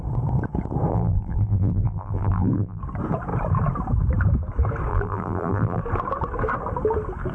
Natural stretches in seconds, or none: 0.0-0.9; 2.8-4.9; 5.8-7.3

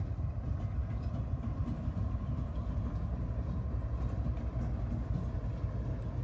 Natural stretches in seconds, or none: 0.0-0.8; 4.3-6.2

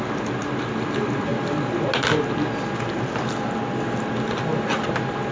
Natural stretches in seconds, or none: 0.0-5.3

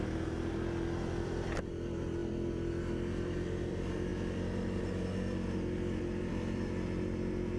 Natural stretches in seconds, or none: 0.0-7.6

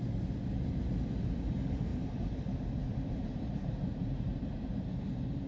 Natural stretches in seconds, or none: 0.0-1.9; 2.4-2.8; 4.7-5.5

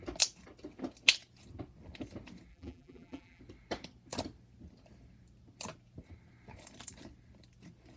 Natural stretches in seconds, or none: 0.0-2.5; 3.4-8.0

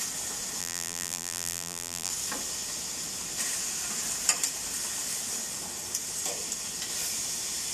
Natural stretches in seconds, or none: 0.0-0.6; 2.1-7.7